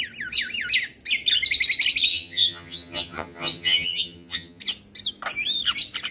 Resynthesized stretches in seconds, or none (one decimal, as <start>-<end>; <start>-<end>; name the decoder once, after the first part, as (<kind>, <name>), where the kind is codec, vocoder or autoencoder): 2.1-4.6 (vocoder, HiFi-GAN)